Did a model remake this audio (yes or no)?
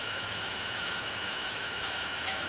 yes